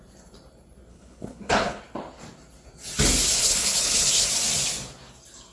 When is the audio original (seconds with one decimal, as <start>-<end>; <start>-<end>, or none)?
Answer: 0.0-0.9; 1.8-3.4; 4.3-5.5